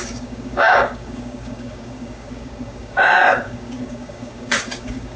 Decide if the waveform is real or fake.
fake